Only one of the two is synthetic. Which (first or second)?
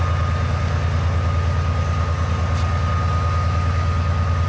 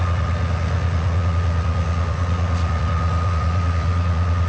second